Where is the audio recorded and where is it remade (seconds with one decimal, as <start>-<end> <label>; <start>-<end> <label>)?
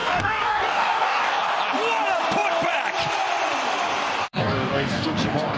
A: 0.0-1.4 remade; 1.4-4.2 recorded; 4.2-5.6 remade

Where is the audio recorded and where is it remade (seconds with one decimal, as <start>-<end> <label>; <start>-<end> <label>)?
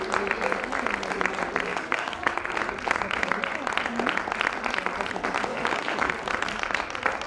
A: 0.0-1.7 recorded; 1.7-2.3 remade; 2.3-5.5 recorded; 5.5-6.1 remade; 6.1-7.3 recorded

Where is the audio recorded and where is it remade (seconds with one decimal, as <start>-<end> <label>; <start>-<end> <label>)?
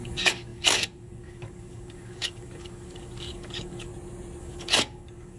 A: 0.0-3.9 remade; 3.9-4.4 recorded; 4.4-5.4 remade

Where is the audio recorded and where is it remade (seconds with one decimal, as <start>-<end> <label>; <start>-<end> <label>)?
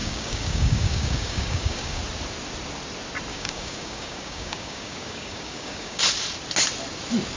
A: 0.0-2.0 remade; 2.0-3.3 recorded; 3.3-6.0 remade; 6.0-7.4 recorded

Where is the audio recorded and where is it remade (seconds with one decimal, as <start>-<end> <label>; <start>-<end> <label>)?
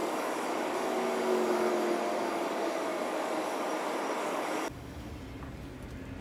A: 0.0-1.7 remade; 1.7-2.1 recorded; 2.1-3.7 remade; 3.7-4.2 recorded; 4.2-5.1 remade; 5.1-6.2 recorded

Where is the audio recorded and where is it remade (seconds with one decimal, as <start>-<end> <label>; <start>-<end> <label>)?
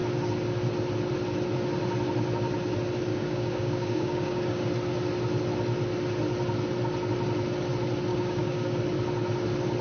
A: 0.0-3.1 recorded; 3.1-4.7 remade; 4.7-8.1 recorded; 8.1-8.8 remade; 8.8-9.8 recorded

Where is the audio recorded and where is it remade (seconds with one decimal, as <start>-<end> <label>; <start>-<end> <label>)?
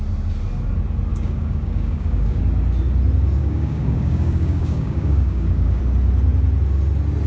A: 0.0-1.1 recorded; 1.1-2.4 remade; 2.4-3.4 recorded; 3.4-5.8 remade; 5.8-7.3 recorded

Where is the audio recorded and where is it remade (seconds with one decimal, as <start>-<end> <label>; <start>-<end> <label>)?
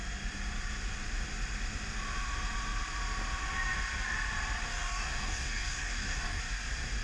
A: 0.0-4.7 recorded; 4.7-6.4 remade; 6.4-7.0 recorded